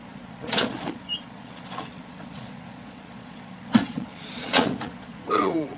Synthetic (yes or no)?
yes